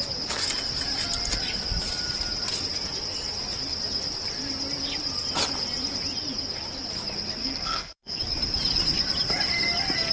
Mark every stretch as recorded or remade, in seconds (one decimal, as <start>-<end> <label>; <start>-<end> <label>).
0.0-7.4 recorded; 7.4-8.2 remade; 8.2-10.1 recorded